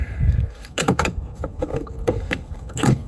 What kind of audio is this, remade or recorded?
remade